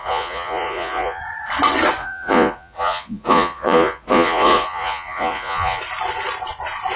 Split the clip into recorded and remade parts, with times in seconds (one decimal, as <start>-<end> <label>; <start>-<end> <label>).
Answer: 0.0-1.2 remade; 1.2-2.0 recorded; 2.0-5.8 remade; 5.8-7.0 recorded